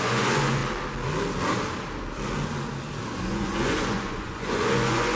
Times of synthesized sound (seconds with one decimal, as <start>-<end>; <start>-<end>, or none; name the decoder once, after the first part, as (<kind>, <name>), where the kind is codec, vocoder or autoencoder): 0.0-0.6 (vocoder, Vocos); 3.3-5.2